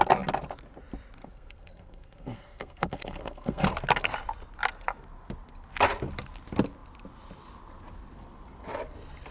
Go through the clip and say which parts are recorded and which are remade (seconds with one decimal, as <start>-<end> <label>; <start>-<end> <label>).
0.0-1.2 recorded; 1.2-3.7 remade; 3.7-9.3 recorded